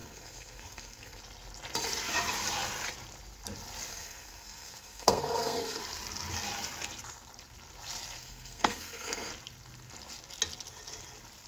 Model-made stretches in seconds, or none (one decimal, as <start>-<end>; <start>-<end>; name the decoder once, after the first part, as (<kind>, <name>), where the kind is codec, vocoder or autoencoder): 0.0-1.2 (codec, SNAC); 3.9-5.8; 8.2-9.3